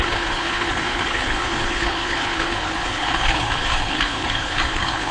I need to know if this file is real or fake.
fake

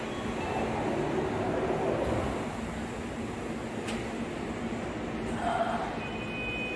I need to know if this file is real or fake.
real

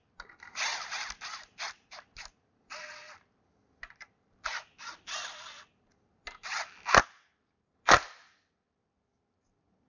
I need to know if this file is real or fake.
real